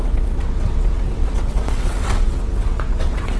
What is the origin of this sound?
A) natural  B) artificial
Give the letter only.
B